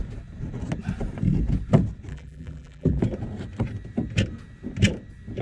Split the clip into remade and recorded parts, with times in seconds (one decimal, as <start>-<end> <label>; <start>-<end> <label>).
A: 0.0-2.1 recorded; 2.1-3.0 remade; 3.0-5.4 recorded